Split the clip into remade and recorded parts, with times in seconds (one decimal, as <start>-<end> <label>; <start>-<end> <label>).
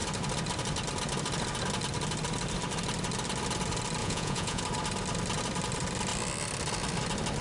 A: 0.0-4.0 recorded; 4.0-4.6 remade; 4.6-7.4 recorded